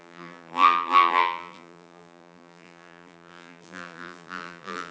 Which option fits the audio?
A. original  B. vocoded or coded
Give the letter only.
B